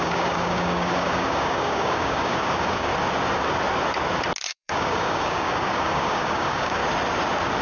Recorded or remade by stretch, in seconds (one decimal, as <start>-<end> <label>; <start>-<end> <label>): 0.0-2.9 remade; 2.9-4.5 recorded; 4.5-6.8 remade; 6.8-7.6 recorded